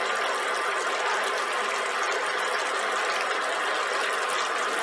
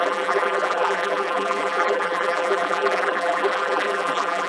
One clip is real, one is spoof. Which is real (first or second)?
first